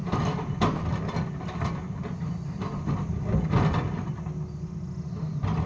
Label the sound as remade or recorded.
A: recorded